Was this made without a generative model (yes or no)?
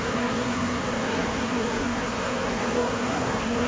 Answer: no